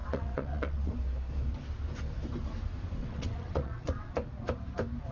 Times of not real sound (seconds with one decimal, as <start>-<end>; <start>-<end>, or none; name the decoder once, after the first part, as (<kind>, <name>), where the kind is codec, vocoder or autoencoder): 0.0-0.9 (vocoder, WaveNeXt); 3.0-4.1